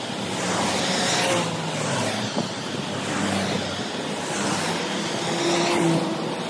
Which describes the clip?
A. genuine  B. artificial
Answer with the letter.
A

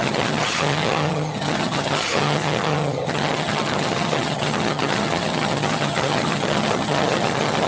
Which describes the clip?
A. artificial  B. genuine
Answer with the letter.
A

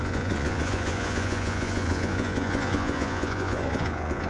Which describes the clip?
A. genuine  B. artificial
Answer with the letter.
B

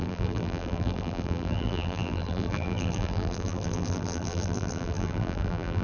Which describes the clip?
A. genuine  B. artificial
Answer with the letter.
B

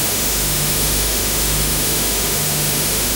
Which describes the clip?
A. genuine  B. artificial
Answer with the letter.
B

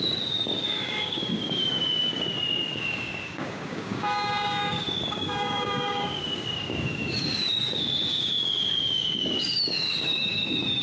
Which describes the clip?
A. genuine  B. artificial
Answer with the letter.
B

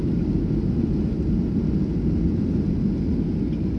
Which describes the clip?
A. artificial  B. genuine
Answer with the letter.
B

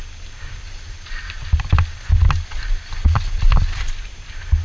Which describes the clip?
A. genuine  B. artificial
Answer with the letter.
A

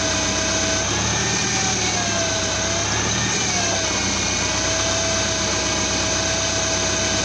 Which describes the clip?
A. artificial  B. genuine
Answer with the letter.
B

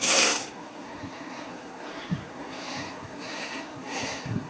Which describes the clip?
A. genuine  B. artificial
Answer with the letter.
B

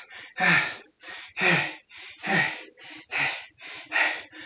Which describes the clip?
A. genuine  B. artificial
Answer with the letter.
A